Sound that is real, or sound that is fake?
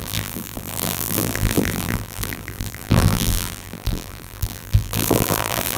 fake